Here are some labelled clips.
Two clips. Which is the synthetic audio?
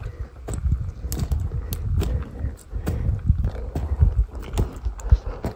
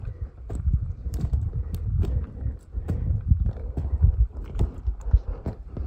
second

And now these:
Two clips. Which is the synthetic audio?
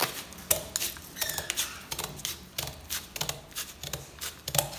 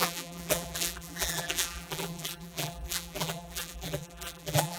second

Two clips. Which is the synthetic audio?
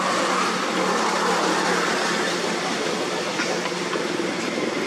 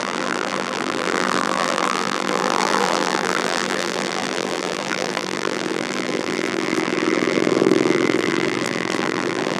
second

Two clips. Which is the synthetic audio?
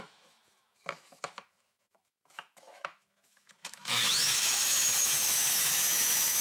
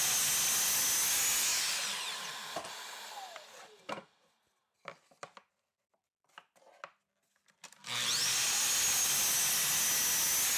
first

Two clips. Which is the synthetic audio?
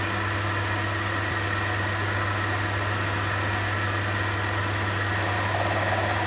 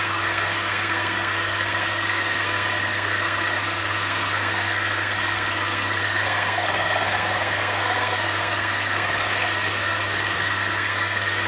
second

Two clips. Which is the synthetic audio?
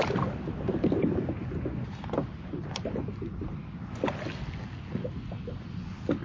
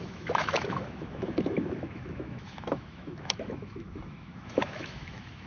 second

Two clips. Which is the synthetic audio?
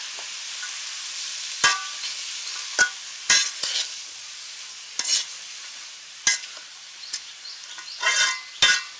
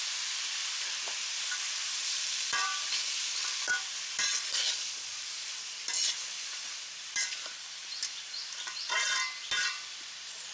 second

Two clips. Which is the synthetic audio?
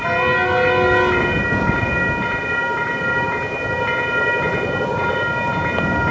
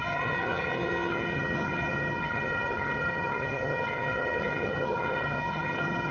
second